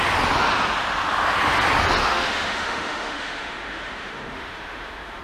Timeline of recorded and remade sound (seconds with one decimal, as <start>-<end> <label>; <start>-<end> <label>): 0.0-2.0 recorded; 2.0-5.2 remade